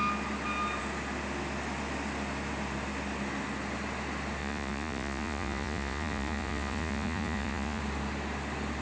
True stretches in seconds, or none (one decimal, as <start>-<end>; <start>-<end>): 0.0-4.4; 7.8-8.8

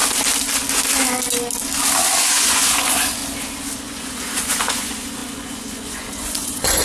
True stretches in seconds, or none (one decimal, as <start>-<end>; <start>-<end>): 0.0-2.2; 3.2-3.8

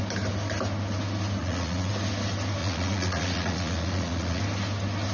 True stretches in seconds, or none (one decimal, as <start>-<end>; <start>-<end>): 0.0-1.4; 1.9-2.6; 4.4-5.1

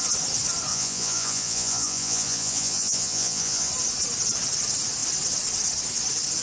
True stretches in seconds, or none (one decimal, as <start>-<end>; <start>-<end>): 0.0-0.7; 3.7-6.4

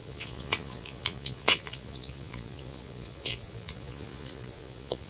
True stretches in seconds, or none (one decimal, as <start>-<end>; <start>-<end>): none

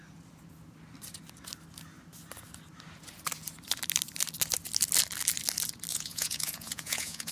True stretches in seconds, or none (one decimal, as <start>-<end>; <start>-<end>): 0.0-5.9